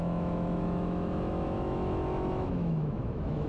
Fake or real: fake